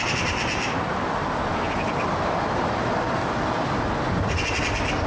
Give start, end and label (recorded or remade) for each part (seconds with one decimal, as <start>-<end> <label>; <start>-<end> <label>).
0.0-5.1 recorded